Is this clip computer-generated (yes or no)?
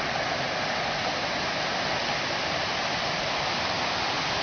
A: no